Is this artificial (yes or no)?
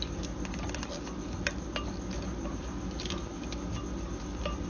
no